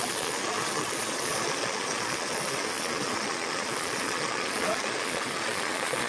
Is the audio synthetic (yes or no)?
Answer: yes